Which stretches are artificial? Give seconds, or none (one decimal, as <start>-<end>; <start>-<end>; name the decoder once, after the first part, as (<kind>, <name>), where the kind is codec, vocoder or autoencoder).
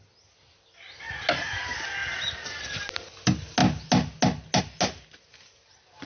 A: 2.0-2.8 (vocoder, BigVGAN v2)